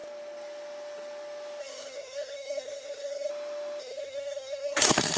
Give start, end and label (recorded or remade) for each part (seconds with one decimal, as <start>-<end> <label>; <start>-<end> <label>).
0.0-1.6 recorded; 1.6-3.3 remade; 3.3-3.8 recorded; 3.8-5.2 remade